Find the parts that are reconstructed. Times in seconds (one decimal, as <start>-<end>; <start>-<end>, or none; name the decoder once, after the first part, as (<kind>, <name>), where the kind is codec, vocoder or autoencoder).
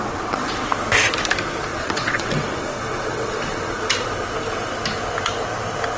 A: 0.0-0.7 (vocoder, WaveNeXt); 1.7-3.7